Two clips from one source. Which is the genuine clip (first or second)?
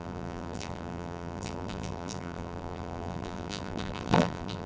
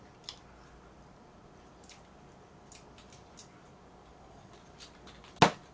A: second